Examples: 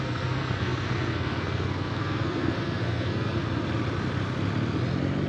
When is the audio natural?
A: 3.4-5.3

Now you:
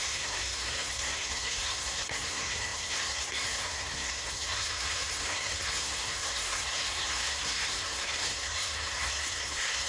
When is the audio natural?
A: none